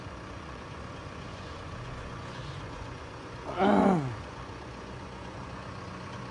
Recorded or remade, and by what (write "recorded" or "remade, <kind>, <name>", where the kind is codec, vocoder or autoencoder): remade, vocoder, Vocos